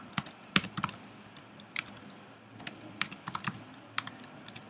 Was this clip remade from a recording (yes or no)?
no